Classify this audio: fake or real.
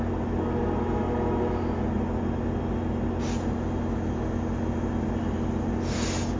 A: real